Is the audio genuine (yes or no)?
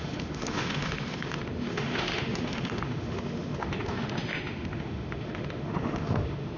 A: no